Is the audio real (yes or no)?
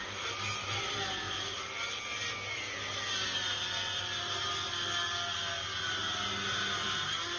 yes